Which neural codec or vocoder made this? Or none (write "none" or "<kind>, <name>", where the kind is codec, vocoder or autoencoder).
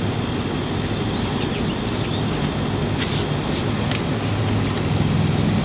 none